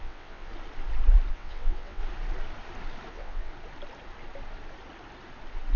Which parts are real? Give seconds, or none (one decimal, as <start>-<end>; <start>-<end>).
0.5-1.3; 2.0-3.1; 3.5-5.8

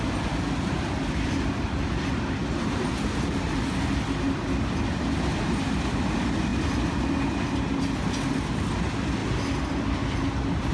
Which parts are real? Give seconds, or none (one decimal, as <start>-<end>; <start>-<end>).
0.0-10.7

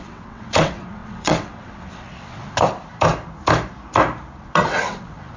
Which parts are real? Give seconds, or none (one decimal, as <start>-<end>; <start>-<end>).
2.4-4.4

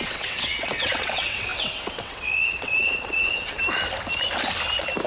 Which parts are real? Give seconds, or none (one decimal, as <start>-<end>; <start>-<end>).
3.6-5.1

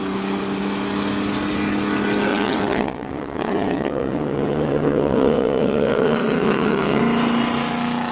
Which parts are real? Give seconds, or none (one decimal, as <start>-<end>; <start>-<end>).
0.0-2.3; 7.0-8.1